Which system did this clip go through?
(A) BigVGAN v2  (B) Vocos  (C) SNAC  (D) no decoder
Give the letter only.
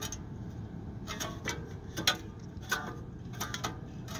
D